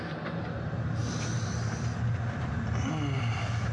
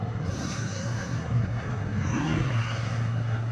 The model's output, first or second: second